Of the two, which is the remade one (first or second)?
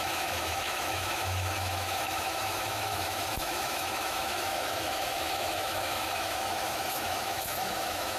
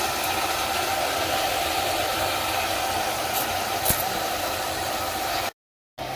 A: first